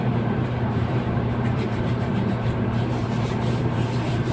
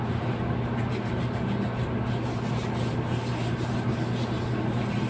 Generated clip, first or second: first